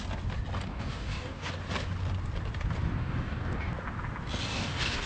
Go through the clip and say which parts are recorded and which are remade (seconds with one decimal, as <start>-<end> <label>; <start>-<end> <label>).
0.0-0.7 recorded; 0.7-1.5 remade; 1.5-3.0 recorded; 3.0-3.7 remade; 3.7-4.5 recorded; 4.5-5.1 remade